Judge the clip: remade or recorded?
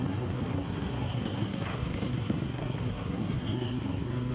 remade